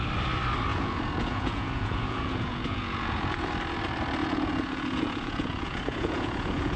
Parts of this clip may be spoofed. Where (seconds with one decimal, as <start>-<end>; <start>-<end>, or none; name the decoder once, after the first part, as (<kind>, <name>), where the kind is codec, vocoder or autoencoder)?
0.7-3.5 (vocoder, Vocos); 4.2-6.8